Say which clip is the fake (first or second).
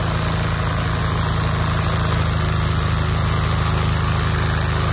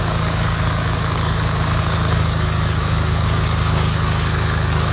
second